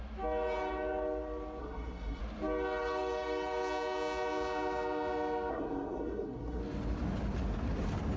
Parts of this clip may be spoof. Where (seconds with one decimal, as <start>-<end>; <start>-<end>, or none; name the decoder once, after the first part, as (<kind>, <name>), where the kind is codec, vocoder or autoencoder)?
1.6-2.2 (codec, SNAC); 5.5-6.6

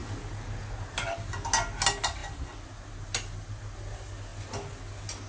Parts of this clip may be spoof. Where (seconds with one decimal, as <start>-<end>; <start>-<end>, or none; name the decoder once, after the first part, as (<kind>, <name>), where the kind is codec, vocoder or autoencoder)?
none